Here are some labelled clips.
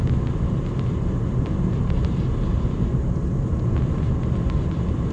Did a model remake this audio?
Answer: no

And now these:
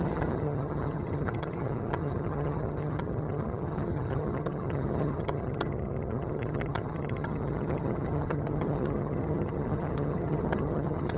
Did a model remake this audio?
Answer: yes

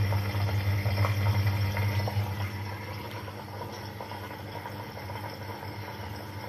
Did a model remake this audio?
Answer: no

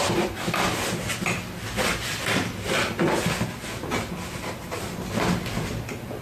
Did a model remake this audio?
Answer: no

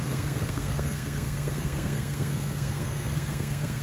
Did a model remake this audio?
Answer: yes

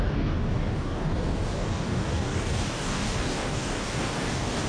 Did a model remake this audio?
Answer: yes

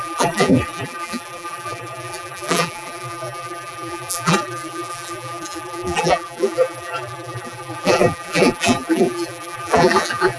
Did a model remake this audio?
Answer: yes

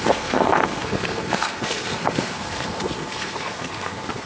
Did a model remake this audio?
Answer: yes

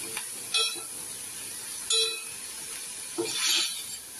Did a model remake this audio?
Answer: no